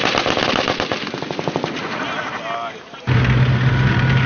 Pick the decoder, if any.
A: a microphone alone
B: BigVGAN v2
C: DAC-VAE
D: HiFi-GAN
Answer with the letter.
A